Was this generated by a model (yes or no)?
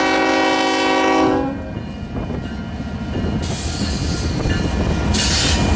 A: no